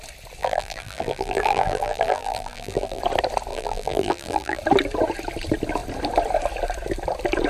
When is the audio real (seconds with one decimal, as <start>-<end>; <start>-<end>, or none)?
0.0-0.4; 3.0-3.5; 4.6-7.5